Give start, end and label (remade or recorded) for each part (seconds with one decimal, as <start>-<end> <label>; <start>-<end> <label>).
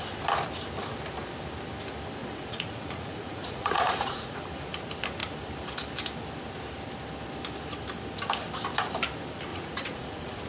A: 0.0-2.2 recorded; 2.2-4.4 remade; 4.4-9.5 recorded; 9.5-10.5 remade